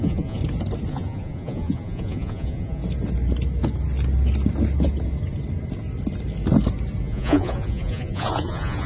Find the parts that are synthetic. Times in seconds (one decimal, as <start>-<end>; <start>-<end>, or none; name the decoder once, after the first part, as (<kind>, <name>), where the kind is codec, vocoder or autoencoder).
0.0-0.4 (vocoder, Vocos); 0.9-2.8; 7.0-8.9